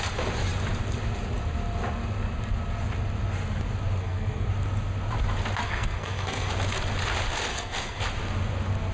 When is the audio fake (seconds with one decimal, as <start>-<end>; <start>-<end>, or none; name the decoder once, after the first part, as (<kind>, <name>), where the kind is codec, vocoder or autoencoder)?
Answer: 4.0-4.5 (codec, SNAC); 5.6-6.5; 7.5-8.0